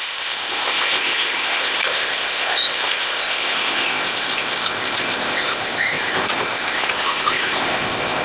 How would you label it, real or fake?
fake